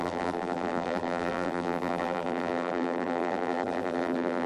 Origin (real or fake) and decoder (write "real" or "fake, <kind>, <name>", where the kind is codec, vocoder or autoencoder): fake, vocoder, BigVGAN v2